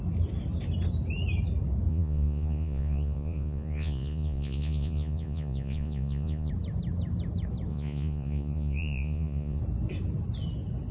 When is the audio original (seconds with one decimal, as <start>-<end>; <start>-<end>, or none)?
0.0-1.9; 6.5-7.7; 9.6-10.9